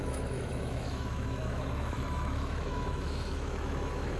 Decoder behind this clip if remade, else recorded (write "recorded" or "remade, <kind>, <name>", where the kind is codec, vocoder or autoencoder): remade, autoencoder, DAC-VAE